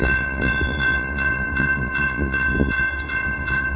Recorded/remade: remade